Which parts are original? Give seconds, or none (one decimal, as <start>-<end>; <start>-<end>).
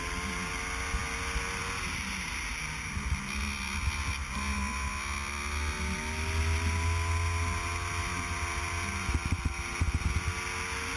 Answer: 0.0-11.0